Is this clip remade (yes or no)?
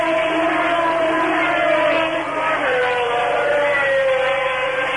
yes